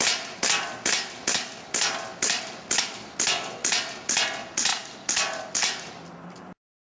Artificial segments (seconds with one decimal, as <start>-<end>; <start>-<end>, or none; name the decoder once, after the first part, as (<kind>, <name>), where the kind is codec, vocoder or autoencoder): none